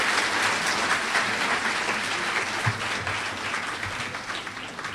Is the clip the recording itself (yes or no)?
yes